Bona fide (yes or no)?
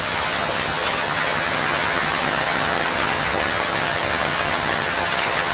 no